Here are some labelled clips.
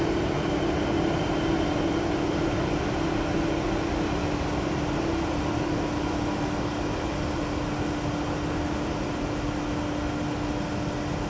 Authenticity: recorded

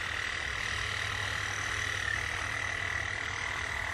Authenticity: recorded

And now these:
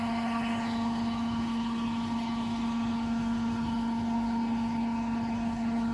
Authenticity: remade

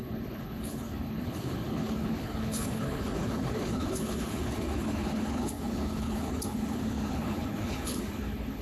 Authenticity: remade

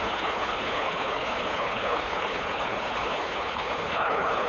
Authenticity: remade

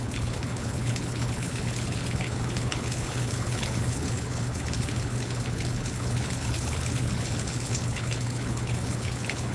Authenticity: remade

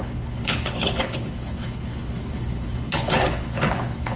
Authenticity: remade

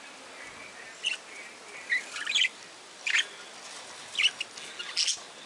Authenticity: recorded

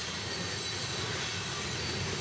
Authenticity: recorded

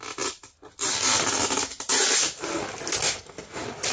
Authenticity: recorded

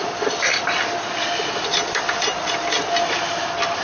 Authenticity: recorded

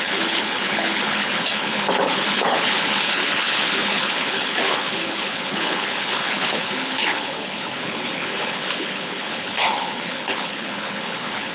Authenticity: remade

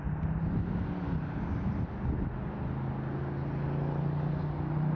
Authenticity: recorded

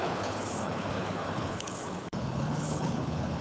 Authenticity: remade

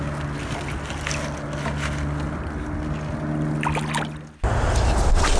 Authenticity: recorded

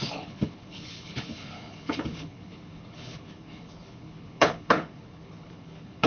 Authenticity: remade